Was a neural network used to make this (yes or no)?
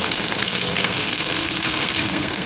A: yes